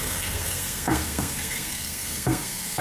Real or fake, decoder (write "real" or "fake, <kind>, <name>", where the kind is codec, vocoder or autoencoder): fake, codec, SNAC